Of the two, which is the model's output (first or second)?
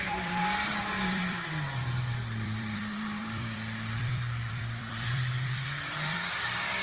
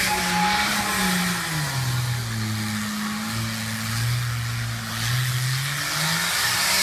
first